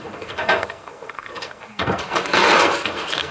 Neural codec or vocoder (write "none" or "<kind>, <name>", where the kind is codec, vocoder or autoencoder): codec, SNAC